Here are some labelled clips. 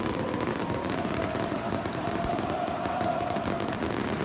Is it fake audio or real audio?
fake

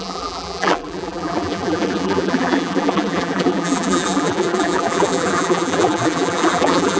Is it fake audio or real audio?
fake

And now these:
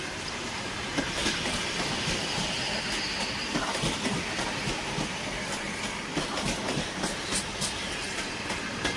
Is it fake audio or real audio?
real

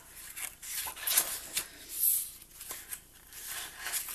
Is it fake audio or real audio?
real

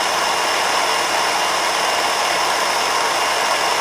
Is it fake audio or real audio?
real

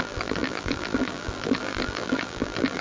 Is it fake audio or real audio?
fake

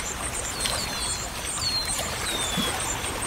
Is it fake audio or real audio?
fake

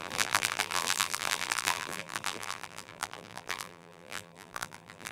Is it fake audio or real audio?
fake